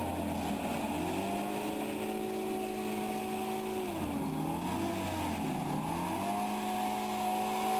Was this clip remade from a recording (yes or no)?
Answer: no